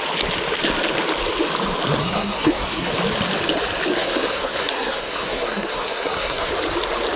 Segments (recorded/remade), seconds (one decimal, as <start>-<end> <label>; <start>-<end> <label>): 0.0-2.0 recorded; 2.0-2.9 remade; 2.9-3.9 recorded; 3.9-6.5 remade; 6.5-7.2 recorded

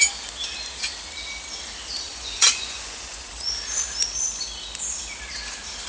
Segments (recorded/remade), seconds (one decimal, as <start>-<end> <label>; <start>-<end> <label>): 0.0-2.1 recorded; 2.1-3.3 remade; 3.3-5.9 recorded

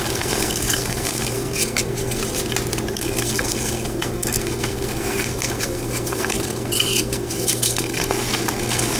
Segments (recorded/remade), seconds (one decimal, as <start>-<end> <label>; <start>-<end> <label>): 0.0-2.2 remade; 2.2-2.9 recorded; 2.9-9.0 remade

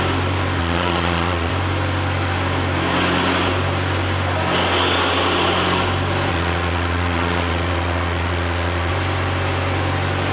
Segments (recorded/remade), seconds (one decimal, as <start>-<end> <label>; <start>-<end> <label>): 0.0-0.6 recorded; 0.6-1.5 remade; 1.5-6.3 recorded; 6.3-8.9 remade; 8.9-10.3 recorded

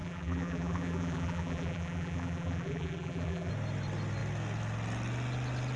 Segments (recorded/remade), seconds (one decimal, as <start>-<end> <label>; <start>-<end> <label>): 0.0-3.5 remade; 3.5-5.8 recorded

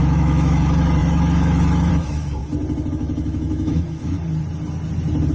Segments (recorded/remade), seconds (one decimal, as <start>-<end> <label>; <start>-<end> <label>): 0.0-2.4 remade; 2.4-2.9 recorded; 2.9-4.2 remade; 4.2-5.3 recorded

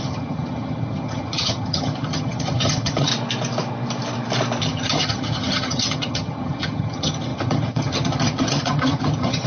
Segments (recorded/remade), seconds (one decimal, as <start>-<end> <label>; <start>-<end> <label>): 0.0-3.1 remade; 3.1-4.6 recorded; 4.6-9.5 remade

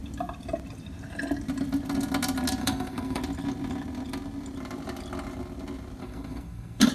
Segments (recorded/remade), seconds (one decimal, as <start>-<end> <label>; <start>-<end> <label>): 0.0-2.6 recorded; 2.6-3.2 remade; 3.2-6.0 recorded; 6.0-6.9 remade